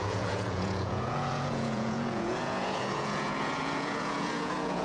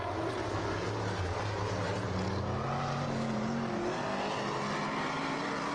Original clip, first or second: second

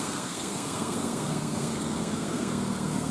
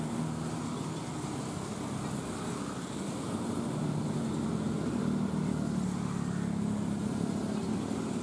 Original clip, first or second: second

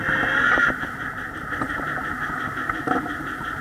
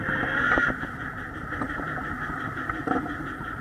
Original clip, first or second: first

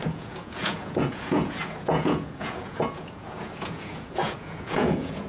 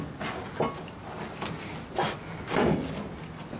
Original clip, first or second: second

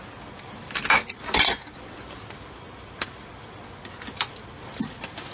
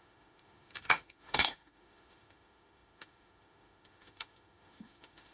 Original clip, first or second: first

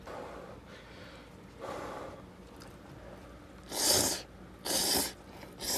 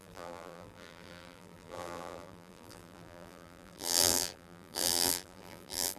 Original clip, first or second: first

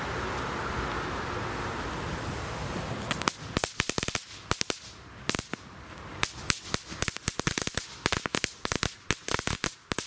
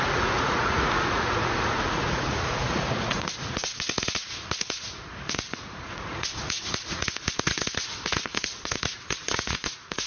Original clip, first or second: first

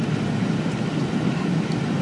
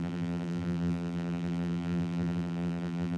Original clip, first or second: first